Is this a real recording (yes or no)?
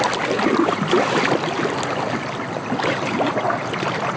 yes